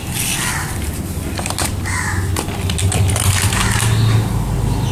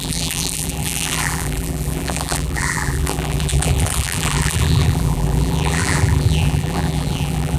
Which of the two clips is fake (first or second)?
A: second